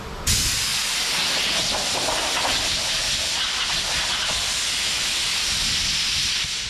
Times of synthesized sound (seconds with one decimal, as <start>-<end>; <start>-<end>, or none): none

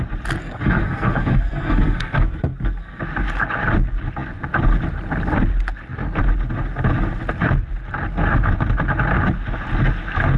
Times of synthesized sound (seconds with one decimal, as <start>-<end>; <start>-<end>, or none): 0.4-3.0

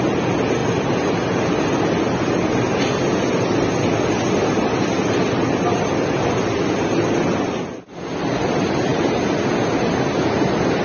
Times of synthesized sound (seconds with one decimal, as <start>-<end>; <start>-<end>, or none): none